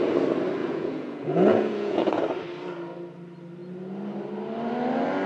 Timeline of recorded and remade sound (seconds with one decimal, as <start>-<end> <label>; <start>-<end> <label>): 0.0-0.6 recorded; 0.6-2.2 remade; 2.2-5.3 recorded